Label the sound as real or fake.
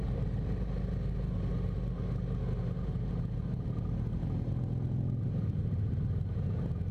real